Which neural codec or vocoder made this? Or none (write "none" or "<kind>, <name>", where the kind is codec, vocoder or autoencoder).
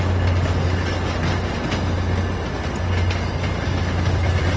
none